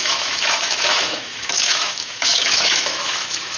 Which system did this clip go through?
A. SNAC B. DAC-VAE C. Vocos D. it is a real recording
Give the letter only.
B